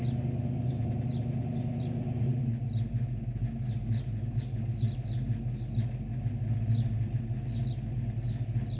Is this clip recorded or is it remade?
recorded